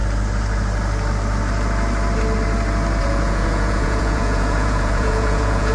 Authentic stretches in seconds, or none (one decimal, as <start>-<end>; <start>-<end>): 0.0-3.0